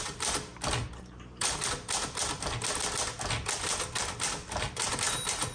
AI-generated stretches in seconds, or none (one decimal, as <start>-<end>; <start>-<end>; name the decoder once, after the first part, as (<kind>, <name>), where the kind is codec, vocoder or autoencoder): 0.0-0.5 (vocoder, BigVGAN v2); 1.0-1.6; 4.9-5.5